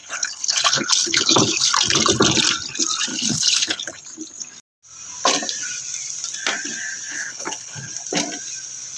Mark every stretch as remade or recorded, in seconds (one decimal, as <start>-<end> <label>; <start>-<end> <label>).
0.0-1.7 remade; 1.7-3.1 recorded; 3.1-4.0 remade; 4.0-7.1 recorded; 7.1-7.9 remade; 7.9-9.0 recorded